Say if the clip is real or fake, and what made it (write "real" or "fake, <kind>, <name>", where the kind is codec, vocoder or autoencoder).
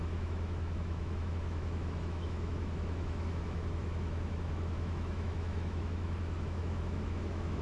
fake, autoencoder, DAC-VAE